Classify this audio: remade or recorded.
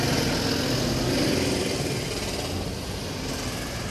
recorded